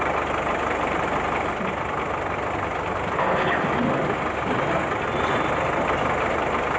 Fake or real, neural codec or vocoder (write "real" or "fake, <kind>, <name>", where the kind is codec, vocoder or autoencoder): real